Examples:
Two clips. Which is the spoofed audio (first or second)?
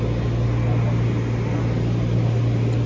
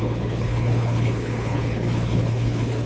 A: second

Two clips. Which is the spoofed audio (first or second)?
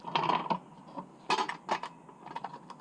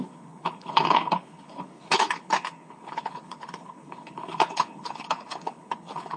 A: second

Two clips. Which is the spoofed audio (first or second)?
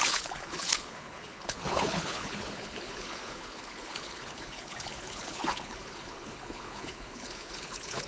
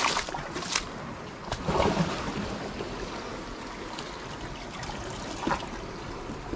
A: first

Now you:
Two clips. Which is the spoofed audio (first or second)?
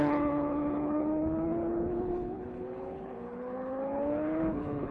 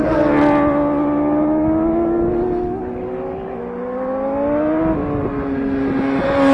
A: first